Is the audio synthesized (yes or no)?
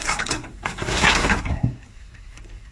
yes